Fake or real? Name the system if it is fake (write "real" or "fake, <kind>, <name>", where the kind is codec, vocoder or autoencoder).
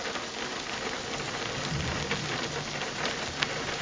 real